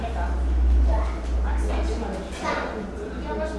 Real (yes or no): yes